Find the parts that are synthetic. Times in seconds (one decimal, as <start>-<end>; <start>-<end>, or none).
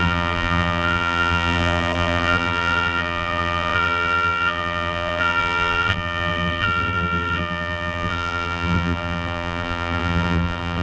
0.0-10.8